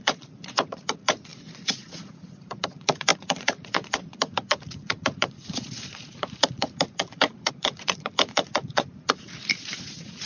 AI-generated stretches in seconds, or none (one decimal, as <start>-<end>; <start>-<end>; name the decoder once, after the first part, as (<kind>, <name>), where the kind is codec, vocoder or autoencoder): 0.0-10.3 (vocoder, Vocos)